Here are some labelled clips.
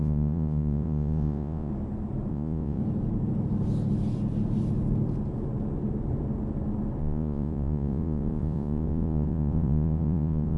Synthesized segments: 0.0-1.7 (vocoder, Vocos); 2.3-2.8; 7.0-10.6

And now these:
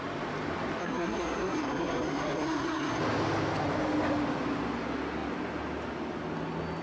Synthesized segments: 0.8-3.0 (codec, SNAC)

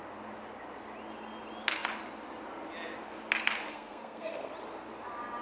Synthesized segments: 3.7-4.5 (codec, SNAC)

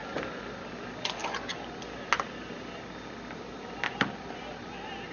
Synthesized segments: none